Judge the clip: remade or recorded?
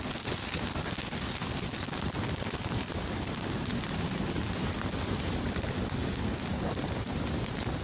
recorded